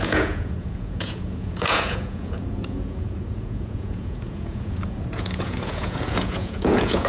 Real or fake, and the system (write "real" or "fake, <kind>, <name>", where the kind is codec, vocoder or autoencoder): fake, vocoder, Vocos